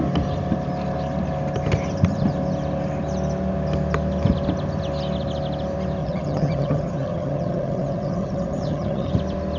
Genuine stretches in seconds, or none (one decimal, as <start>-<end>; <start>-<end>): 0.0-6.0; 9.1-9.6